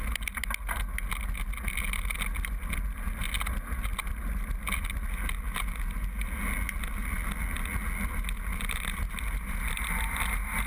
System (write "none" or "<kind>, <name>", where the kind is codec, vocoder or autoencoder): none